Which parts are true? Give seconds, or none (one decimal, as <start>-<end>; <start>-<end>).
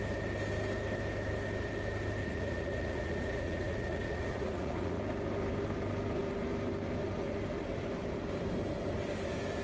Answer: 0.0-2.2; 5.0-9.6